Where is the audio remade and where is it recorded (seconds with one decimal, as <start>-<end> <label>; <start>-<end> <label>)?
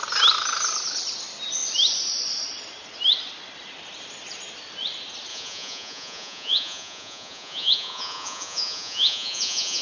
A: 0.0-5.3 recorded; 5.3-9.8 remade